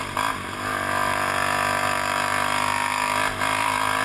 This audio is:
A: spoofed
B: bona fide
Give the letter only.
B